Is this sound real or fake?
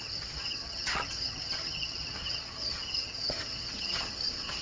fake